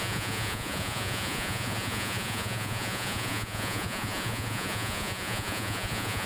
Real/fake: fake